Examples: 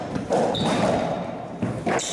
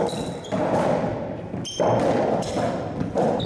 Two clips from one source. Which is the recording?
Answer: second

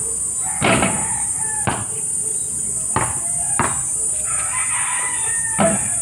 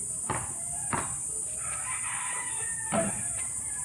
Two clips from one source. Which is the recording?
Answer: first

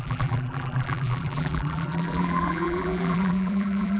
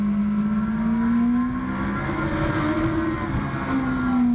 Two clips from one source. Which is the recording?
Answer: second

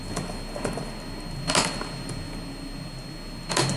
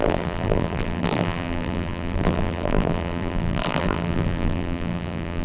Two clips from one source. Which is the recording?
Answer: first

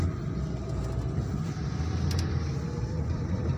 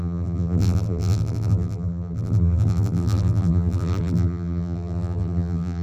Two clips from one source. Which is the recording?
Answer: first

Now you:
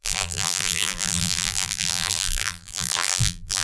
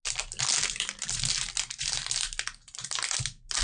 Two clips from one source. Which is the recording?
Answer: second